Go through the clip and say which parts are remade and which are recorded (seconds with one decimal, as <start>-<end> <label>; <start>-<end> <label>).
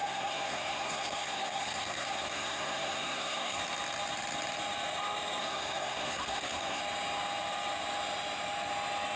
0.0-3.6 remade; 3.6-5.4 recorded; 5.4-6.8 remade; 6.8-9.2 recorded